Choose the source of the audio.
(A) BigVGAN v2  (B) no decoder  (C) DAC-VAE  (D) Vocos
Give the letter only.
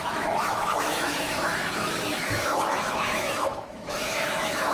C